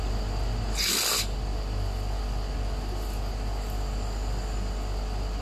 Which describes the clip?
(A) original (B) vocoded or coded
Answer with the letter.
A